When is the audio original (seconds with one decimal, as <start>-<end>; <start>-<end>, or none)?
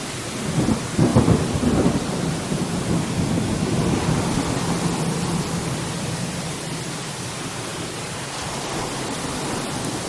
0.0-10.1